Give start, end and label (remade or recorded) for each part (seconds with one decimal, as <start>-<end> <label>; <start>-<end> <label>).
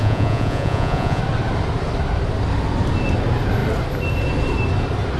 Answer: 0.0-1.2 remade; 1.2-5.2 recorded